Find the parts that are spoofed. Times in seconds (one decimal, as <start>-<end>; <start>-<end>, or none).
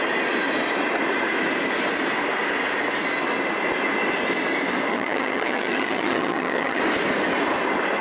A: 4.9-6.8